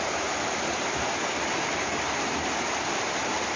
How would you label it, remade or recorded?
recorded